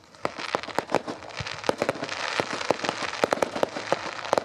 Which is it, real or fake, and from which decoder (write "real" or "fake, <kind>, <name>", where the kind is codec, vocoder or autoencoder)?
real